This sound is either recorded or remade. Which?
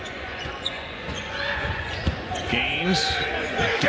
remade